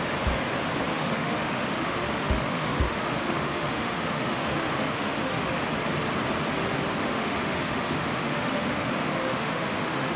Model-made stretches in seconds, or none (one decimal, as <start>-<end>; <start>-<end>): 0.9-5.6; 7.0-10.2